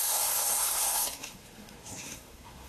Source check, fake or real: fake